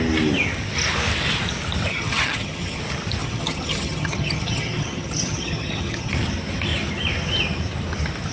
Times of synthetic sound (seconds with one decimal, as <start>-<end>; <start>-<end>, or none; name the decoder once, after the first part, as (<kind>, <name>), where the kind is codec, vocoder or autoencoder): 1.9-2.8 (vocoder, HiFi-GAN); 3.2-6.1